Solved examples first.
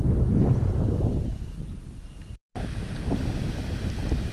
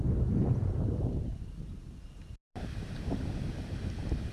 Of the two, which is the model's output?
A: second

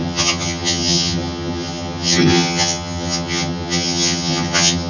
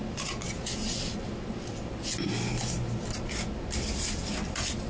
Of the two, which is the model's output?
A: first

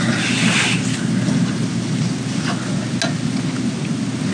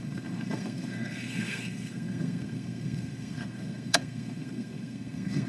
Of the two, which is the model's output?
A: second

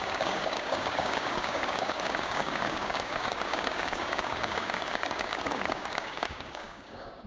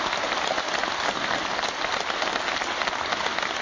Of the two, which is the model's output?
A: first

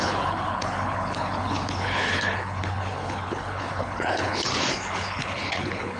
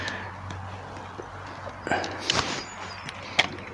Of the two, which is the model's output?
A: first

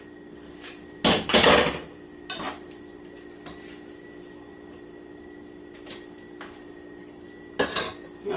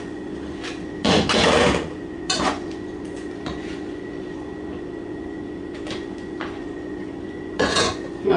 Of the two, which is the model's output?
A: second